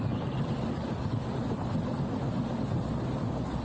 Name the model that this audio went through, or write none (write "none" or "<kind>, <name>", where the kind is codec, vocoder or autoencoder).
none